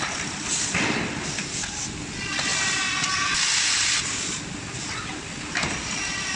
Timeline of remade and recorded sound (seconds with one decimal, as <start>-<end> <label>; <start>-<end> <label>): 0.0-6.4 recorded

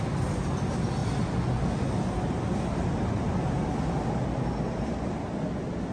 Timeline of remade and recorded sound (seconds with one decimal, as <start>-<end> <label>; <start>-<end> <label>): 0.0-5.9 recorded

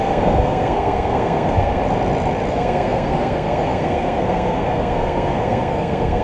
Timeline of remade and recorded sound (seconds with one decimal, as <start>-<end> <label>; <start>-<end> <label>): 0.0-1.8 remade; 1.8-2.5 recorded; 2.5-6.2 remade

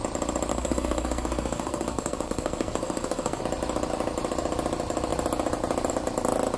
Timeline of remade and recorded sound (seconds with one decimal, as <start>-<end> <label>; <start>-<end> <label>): 0.0-0.5 recorded; 0.5-3.4 remade; 3.4-6.6 recorded

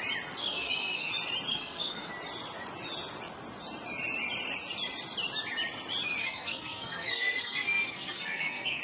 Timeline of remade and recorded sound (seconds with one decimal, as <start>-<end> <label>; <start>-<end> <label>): 0.0-0.4 recorded; 0.4-1.1 remade; 1.1-1.5 recorded; 1.5-2.1 remade; 2.1-6.2 recorded; 6.2-8.8 remade

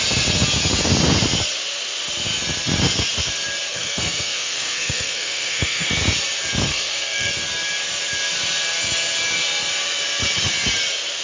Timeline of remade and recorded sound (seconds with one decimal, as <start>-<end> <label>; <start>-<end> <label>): 0.0-3.7 recorded; 3.7-5.9 remade; 5.9-6.7 recorded; 6.7-7.3 remade; 7.3-11.2 recorded